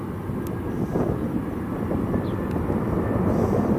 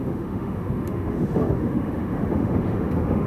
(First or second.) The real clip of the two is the first